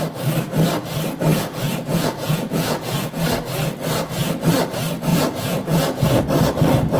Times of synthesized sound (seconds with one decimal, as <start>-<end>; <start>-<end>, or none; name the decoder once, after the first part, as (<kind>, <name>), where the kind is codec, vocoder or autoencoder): 1.3-3.1 (vocoder, Vocos); 5.1-6.2